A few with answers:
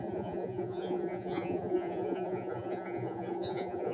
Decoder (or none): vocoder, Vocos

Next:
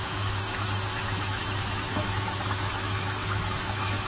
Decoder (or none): autoencoder, DAC-VAE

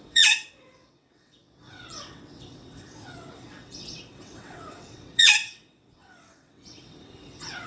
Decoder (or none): vocoder, WaveNeXt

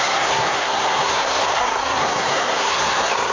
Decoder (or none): codec, SNAC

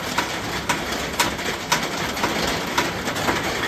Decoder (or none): none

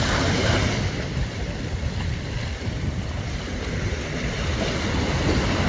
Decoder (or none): none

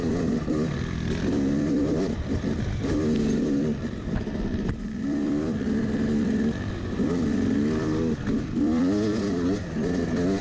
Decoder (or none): vocoder, BigVGAN v2